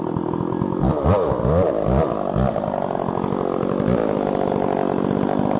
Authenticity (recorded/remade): recorded